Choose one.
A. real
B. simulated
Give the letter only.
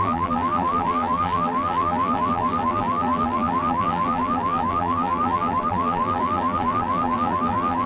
B